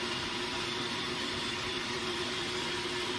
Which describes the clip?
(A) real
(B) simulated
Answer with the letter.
B